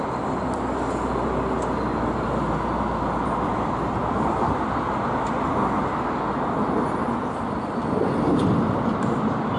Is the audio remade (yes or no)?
no